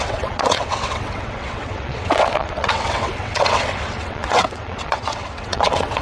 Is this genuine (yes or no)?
no